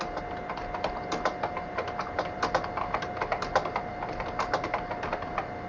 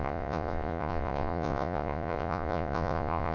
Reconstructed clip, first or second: second